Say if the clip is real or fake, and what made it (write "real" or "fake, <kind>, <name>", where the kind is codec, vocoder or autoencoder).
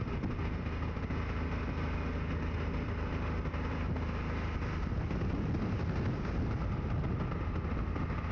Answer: real